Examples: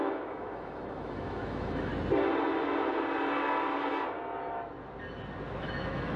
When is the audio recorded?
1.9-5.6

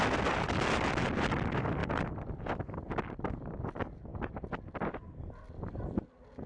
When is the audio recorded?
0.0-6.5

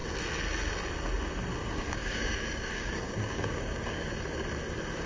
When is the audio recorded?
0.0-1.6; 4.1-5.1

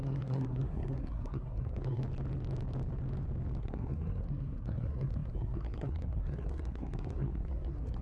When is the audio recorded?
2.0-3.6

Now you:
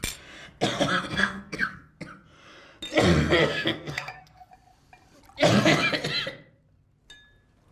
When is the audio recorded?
0.0-1.1; 1.9-3.4; 4.5-7.7

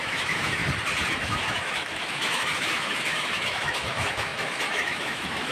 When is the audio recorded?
0.6-1.1